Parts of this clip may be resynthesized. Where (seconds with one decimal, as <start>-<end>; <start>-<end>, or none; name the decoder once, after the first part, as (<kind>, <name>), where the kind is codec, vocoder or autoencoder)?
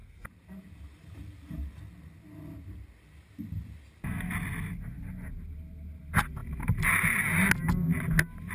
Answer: none